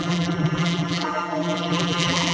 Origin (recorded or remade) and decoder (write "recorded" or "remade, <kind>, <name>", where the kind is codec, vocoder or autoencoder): remade, vocoder, BigVGAN v2